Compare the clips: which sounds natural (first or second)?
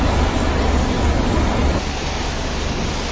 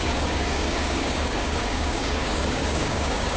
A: first